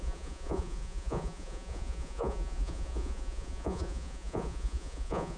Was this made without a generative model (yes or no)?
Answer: no